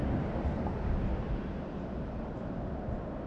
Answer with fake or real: real